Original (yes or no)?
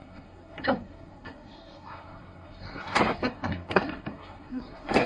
no